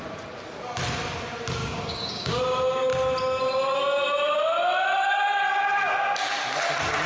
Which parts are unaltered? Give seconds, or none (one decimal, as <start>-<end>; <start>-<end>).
0.0-1.6; 2.4-7.1